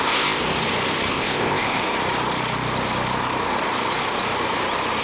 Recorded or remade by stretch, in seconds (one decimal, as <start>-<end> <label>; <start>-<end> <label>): 0.0-0.4 remade; 0.4-1.1 recorded; 1.1-1.8 remade; 1.8-5.0 recorded